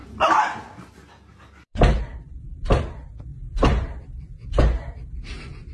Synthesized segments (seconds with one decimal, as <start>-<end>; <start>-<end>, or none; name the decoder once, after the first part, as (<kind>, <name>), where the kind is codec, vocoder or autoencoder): 0.0-2.8 (vocoder, BigVGAN v2); 3.3-4.6